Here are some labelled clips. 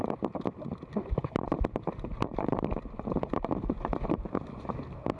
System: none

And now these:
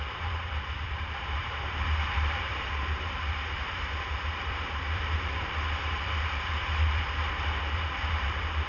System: vocoder, BigVGAN v2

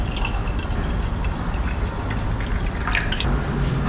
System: none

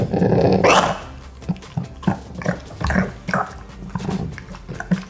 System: none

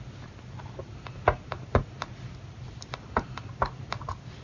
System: none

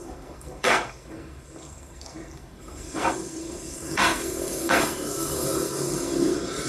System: codec, SNAC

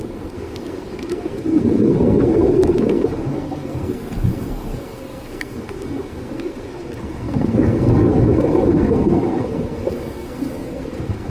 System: codec, SNAC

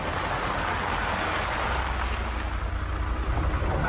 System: none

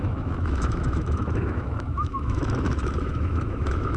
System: autoencoder, DAC-VAE